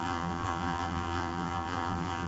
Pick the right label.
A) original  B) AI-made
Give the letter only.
B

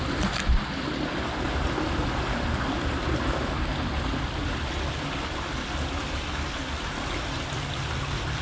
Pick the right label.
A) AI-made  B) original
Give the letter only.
B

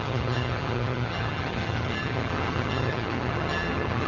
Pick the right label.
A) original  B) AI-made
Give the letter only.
B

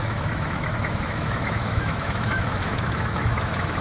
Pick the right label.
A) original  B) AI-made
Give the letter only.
B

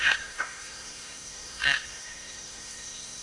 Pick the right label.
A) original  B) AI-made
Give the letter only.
B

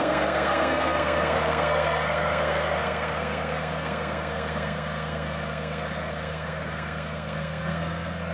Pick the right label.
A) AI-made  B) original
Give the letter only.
A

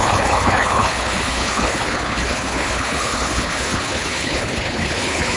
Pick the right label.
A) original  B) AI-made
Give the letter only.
B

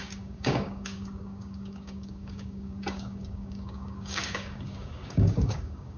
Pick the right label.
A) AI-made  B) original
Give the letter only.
A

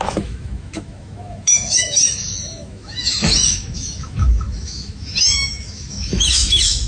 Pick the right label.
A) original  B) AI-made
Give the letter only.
B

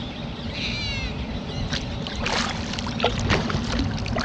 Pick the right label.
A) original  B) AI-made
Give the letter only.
A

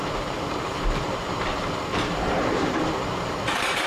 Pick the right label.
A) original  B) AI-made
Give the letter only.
B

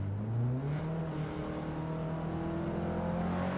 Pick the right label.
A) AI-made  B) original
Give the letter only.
B